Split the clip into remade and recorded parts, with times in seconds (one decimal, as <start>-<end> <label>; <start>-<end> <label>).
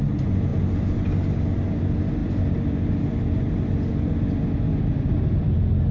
0.0-5.9 recorded